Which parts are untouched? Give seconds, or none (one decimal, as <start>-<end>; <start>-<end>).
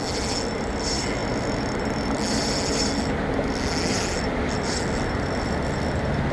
0.0-6.3